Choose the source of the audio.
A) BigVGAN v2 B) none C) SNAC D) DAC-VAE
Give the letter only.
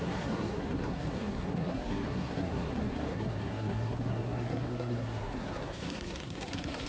C